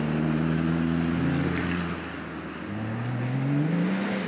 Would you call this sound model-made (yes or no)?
no